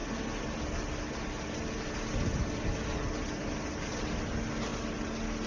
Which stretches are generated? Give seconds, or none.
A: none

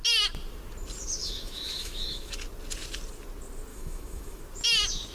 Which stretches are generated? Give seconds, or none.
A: 1.2-2.3 (autoencoder, DAC-VAE); 3.7-4.4

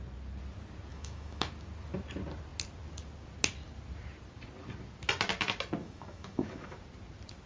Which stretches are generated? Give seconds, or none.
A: 0.9-1.5 (autoencoder, DAC-VAE); 5.8-6.8

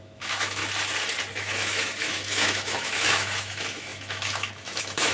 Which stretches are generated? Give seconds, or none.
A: 0.0-0.6 (autoencoder, DAC-VAE); 1.4-5.1

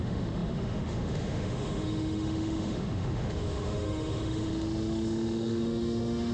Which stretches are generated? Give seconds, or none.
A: 0.0-6.3 (autoencoder, DAC-VAE)

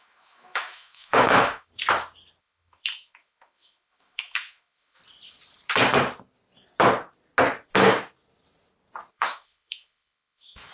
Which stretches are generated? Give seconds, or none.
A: 0.0-1.7 (autoencoder, DAC-VAE); 2.4-5.0; 9.1-10.7

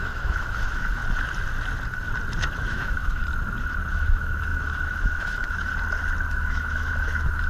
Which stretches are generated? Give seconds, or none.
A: 0.0-1.0 (autoencoder, DAC-VAE); 2.4-3.2; 3.9-5.7; 6.3-7.5